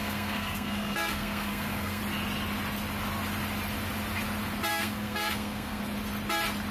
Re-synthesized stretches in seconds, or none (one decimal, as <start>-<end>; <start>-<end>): 0.0-2.0; 4.7-5.8